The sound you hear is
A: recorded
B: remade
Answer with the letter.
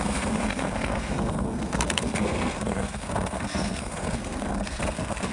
B